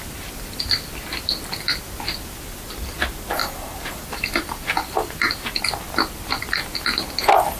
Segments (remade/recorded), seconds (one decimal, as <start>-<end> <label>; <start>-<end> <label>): 0.0-3.4 recorded; 3.4-5.6 remade; 5.6-7.6 recorded